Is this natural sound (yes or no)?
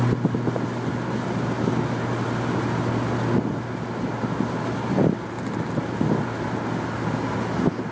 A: yes